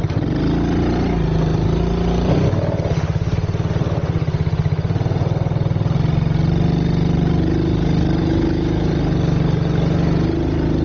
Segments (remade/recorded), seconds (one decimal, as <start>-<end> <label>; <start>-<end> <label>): 0.0-8.2 recorded; 8.2-8.9 remade; 8.9-10.8 recorded